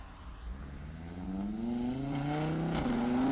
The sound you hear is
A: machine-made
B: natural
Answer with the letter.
B